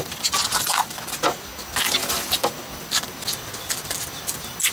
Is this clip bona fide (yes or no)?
yes